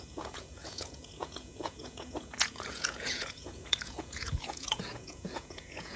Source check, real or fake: fake